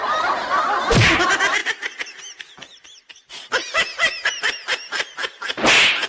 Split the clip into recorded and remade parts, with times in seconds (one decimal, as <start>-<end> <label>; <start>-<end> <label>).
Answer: 0.0-6.1 recorded